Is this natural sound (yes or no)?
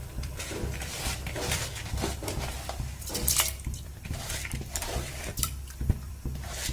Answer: no